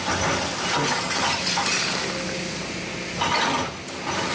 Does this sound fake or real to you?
real